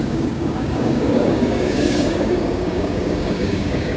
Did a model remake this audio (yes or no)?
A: yes